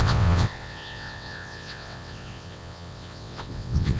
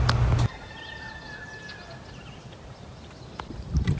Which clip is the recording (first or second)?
second